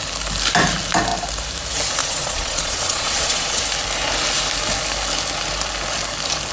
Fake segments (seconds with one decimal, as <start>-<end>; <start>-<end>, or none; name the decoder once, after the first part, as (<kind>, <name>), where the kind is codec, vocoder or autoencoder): 2.0-3.6 (vocoder, Vocos)